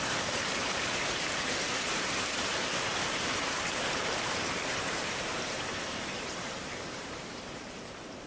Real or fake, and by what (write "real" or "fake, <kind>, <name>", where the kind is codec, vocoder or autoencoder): fake, vocoder, BigVGAN v2